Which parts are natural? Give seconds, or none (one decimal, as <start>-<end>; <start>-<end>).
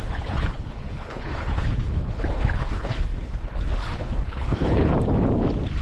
4.9-5.8